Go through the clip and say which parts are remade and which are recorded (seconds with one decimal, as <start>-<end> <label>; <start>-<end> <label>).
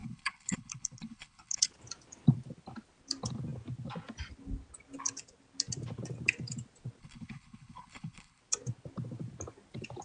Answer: 0.0-1.7 remade; 1.7-7.0 recorded; 7.0-8.4 remade; 8.4-10.0 recorded